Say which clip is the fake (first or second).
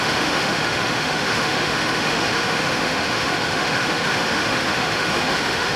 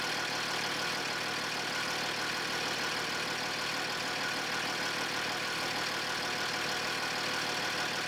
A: first